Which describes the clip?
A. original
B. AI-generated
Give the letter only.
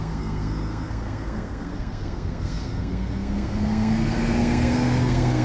B